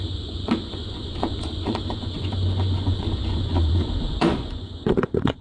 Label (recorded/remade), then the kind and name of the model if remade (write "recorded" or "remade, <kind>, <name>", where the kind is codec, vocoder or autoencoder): remade, vocoder, Vocos